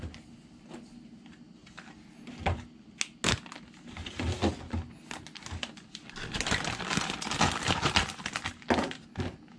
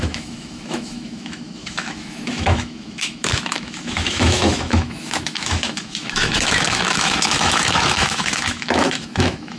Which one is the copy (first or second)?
second